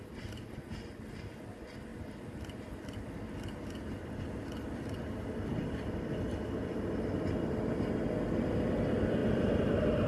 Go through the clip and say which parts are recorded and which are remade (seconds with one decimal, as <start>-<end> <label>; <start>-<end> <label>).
0.0-1.9 recorded; 1.9-2.4 remade; 2.4-10.1 recorded